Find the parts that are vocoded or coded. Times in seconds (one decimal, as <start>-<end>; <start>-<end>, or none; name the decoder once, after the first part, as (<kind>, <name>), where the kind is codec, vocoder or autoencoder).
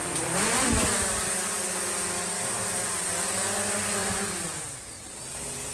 2.6-3.1 (vocoder, BigVGAN v2); 4.0-5.1